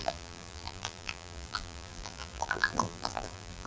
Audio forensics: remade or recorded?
remade